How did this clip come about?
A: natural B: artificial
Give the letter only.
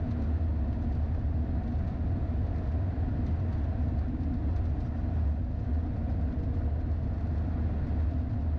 A